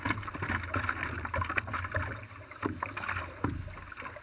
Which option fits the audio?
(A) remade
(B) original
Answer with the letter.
B